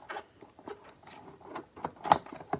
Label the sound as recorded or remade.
recorded